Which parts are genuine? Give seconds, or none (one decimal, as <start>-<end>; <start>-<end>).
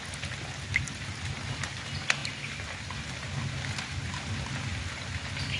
0.0-5.6